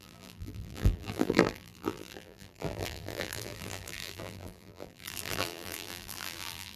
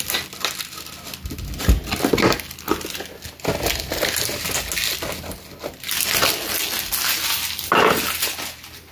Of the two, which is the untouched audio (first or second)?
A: second